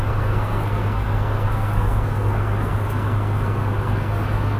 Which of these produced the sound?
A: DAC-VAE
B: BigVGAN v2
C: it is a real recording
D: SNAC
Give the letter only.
D